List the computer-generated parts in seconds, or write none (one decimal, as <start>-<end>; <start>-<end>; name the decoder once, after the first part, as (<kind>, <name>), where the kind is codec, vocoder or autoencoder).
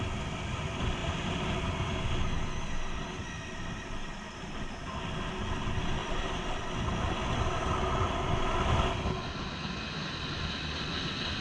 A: 6.0-6.6 (vocoder, BigVGAN v2)